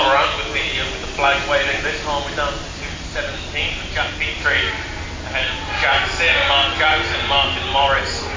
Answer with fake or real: real